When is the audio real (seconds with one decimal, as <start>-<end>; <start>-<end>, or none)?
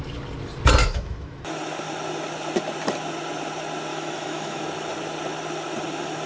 0.0-0.8; 1.5-3.9; 4.6-6.3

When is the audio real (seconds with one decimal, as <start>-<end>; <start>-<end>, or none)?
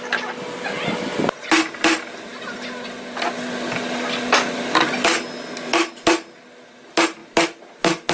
0.0-8.1